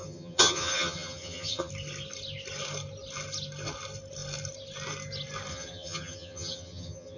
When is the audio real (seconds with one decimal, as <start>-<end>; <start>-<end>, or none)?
1.7-5.5